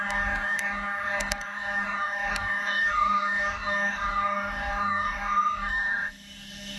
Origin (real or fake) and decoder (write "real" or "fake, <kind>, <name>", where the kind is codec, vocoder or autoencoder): fake, codec, DAC